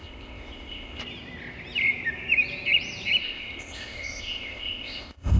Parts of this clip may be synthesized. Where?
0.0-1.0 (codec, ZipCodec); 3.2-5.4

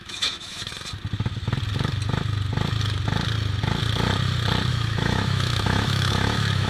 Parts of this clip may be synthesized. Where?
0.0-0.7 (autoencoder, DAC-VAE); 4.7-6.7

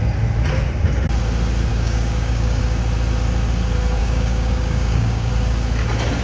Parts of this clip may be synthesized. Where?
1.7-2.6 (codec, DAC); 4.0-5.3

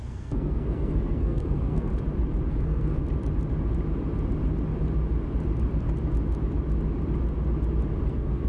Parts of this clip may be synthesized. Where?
0.0-1.9 (codec, SNAC); 2.5-3.0; 8.1-8.5

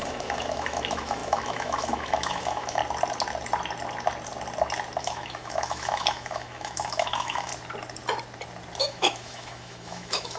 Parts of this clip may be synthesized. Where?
0.0-2.8 (autoencoder, DAC-VAE); 5.0-7.5; 8.8-10.4

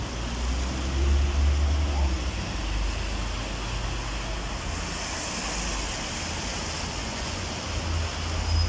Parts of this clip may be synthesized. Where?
7.0-7.5 (vocoder, Vocos)

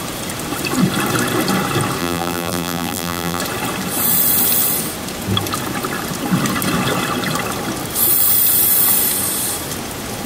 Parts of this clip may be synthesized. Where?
2.0-3.4 (vocoder, BigVGAN v2)

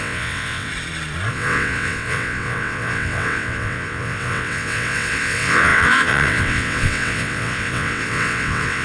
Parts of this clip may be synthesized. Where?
0.0-0.7 (vocoder, WaveNeXt); 1.3-8.8